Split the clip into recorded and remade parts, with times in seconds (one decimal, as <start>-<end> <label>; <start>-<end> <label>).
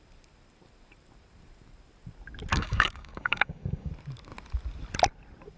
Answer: 0.0-2.5 recorded; 2.5-3.9 remade; 3.9-5.6 recorded